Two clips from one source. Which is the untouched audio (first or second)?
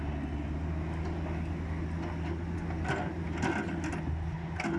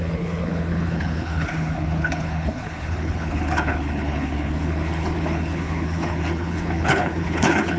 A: first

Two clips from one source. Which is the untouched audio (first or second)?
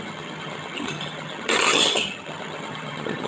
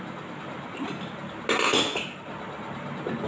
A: second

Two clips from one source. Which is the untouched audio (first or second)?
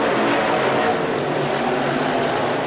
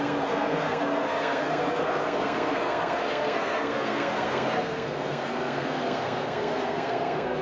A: first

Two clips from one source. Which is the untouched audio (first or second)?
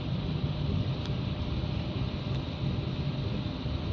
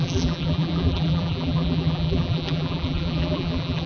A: first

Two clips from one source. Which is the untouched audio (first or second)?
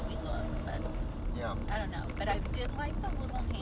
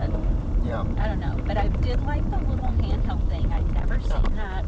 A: first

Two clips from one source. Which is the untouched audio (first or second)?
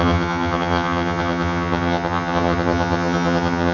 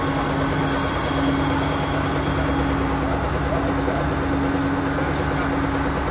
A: second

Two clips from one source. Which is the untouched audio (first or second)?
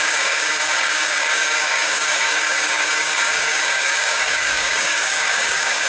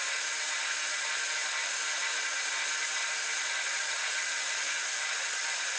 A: second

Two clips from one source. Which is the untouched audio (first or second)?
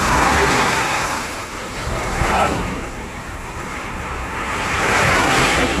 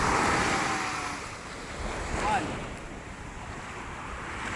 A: second